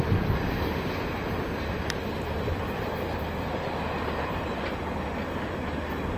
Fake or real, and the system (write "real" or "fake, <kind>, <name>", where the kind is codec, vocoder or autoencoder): real